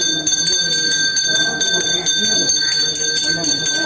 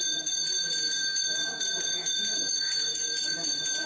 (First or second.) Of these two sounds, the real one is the first